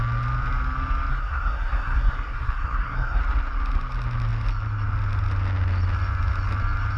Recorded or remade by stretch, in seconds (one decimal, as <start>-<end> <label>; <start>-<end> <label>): 0.0-1.1 recorded; 1.1-3.2 remade; 3.2-7.0 recorded